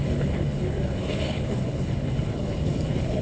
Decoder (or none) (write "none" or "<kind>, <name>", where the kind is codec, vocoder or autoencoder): codec, HILCodec